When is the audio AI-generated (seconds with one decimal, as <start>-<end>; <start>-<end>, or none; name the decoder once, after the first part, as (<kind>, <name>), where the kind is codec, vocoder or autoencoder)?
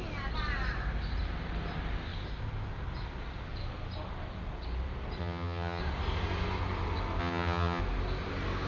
5.2-5.8 (vocoder, HiFi-GAN); 7.2-7.8